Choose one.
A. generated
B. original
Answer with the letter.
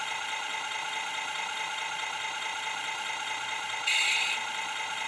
A